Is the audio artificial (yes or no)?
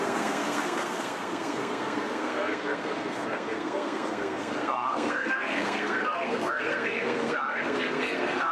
yes